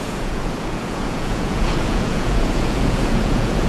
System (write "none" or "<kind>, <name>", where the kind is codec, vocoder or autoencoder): vocoder, Vocos